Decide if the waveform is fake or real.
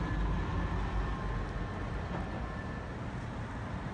real